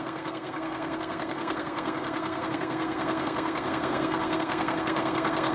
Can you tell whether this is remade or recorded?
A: remade